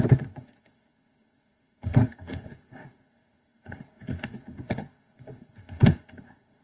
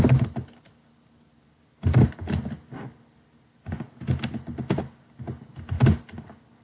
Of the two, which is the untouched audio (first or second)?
second